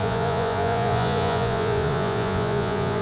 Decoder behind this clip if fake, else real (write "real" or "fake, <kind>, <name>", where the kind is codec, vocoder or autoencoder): fake, vocoder, Vocos